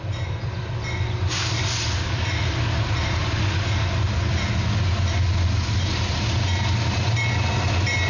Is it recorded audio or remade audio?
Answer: recorded